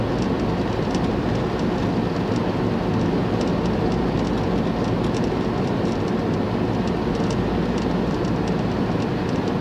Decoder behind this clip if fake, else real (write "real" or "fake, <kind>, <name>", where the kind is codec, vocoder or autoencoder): real